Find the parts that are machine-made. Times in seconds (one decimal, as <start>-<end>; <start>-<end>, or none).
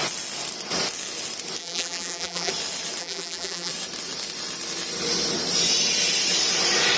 1.6-2.5; 3.0-3.7